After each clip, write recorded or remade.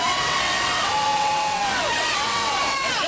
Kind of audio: remade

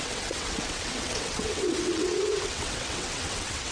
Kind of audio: remade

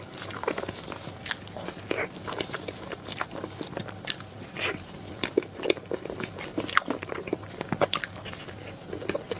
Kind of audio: recorded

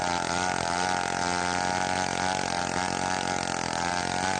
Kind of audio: recorded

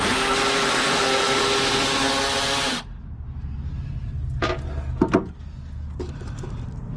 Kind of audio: recorded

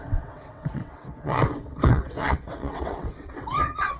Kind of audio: remade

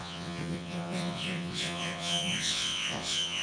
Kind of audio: remade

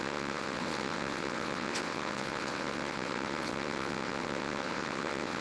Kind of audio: remade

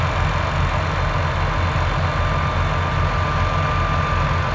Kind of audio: recorded